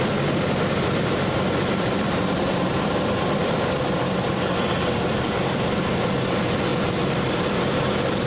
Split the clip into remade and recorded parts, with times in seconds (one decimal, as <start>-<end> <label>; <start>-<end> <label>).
0.0-8.3 remade